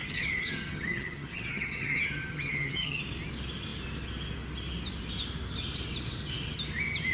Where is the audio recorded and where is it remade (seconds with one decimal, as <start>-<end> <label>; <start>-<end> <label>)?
0.0-3.0 remade; 3.0-7.1 recorded